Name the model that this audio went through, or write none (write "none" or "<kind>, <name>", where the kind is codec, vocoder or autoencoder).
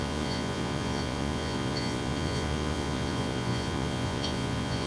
vocoder, Vocos